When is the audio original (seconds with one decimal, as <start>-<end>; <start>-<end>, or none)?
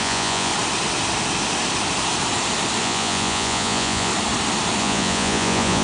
0.5-2.8; 4.1-4.8